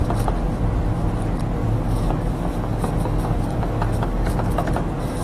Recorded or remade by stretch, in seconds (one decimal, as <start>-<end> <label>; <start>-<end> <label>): 0.0-1.6 recorded; 1.6-4.7 remade; 4.7-5.2 recorded